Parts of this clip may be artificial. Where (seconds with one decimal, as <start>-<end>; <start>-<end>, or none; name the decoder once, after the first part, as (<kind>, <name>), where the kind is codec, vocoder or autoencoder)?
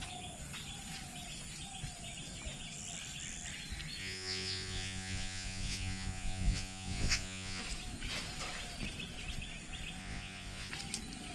4.0-7.6 (vocoder, Vocos); 10.0-10.7